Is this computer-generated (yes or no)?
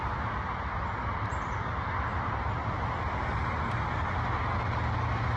no